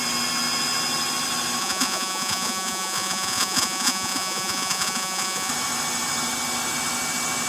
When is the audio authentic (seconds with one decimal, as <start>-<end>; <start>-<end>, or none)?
0.0-1.6; 5.5-7.5

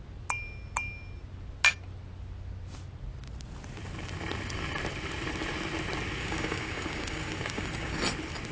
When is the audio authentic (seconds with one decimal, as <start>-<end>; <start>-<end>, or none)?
0.0-6.2; 8.0-8.5

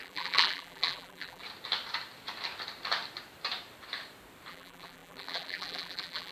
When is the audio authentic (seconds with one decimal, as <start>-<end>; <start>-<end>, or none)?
1.4-4.5

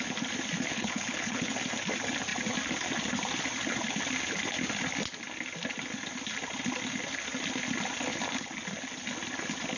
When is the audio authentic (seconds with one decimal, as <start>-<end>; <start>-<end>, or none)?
0.0-0.7; 1.5-9.8

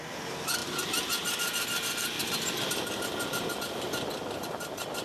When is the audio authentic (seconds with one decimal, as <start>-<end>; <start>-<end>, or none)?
0.0-5.0

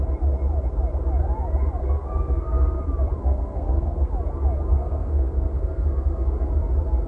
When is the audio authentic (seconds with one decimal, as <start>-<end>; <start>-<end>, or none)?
0.0-1.8; 2.8-3.2; 4.1-4.7; 6.5-7.1

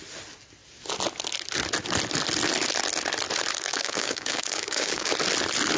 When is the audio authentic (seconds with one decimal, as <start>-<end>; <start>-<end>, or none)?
0.0-3.7; 5.1-5.8

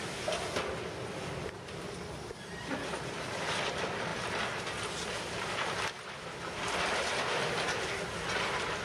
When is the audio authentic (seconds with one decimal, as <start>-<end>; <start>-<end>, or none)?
0.0-8.8